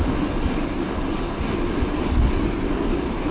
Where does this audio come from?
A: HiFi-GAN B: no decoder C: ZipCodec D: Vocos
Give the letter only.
B